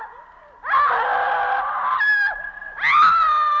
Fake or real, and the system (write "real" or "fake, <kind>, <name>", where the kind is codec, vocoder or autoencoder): real